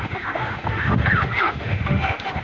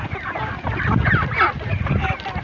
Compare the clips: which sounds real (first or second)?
second